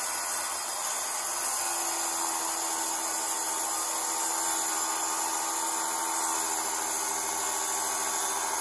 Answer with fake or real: real